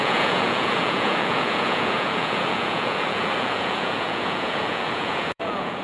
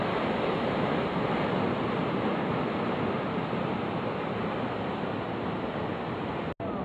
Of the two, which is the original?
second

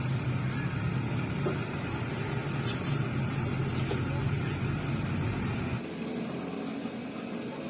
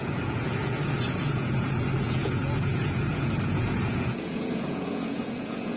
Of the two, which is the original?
first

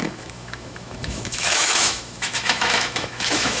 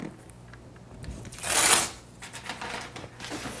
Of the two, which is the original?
second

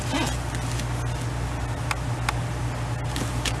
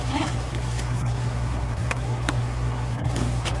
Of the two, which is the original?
first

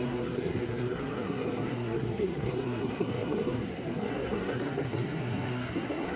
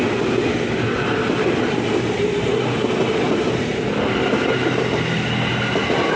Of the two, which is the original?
second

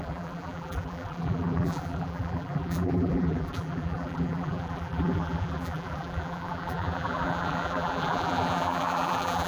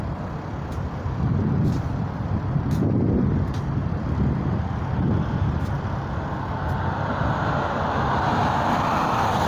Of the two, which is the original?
second